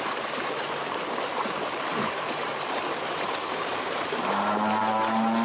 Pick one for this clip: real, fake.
fake